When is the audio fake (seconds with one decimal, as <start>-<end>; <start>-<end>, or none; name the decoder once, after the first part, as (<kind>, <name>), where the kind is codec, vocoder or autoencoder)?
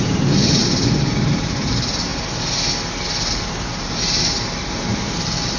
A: 0.0-0.6 (vocoder, BigVGAN v2); 1.3-2.1; 3.3-5.6